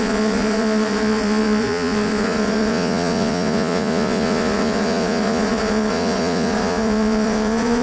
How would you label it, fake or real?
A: fake